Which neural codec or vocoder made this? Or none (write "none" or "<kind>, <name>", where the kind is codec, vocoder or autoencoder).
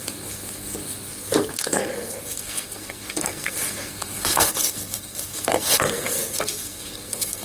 codec, SNAC